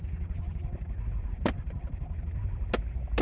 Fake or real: real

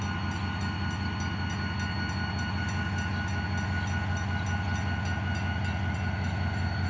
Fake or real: real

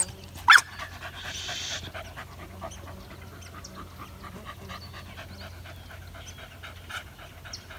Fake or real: real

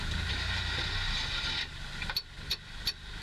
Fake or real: real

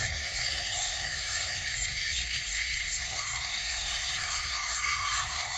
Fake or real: fake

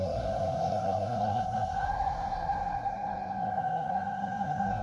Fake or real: fake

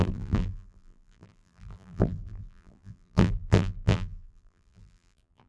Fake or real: fake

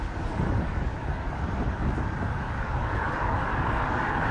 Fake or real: fake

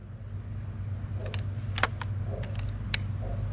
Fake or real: real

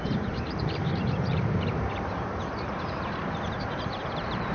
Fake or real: fake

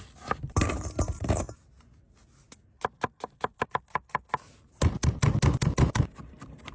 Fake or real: real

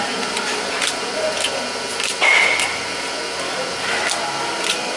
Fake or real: real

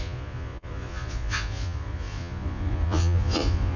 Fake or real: fake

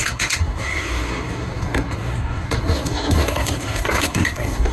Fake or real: fake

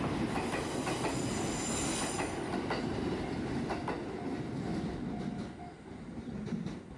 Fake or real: real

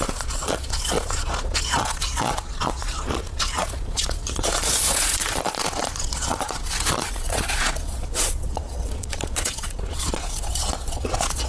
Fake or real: fake